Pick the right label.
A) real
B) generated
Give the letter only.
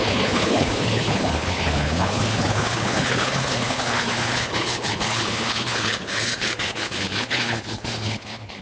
B